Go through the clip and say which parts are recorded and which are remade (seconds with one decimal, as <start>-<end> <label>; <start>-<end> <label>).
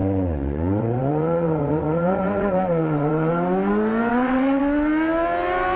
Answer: 0.0-3.3 remade; 3.3-4.1 recorded; 4.1-4.6 remade; 4.6-5.8 recorded